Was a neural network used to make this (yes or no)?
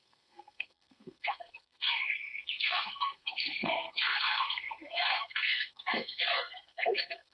yes